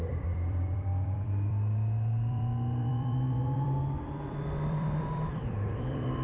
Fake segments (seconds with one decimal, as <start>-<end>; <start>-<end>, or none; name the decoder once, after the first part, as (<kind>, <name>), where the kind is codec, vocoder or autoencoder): 0.0-6.2 (vocoder, BigVGAN v2)